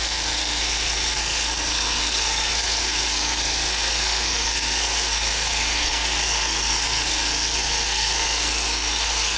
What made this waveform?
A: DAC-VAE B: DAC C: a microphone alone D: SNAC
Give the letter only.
D